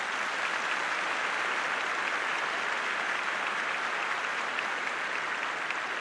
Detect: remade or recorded recorded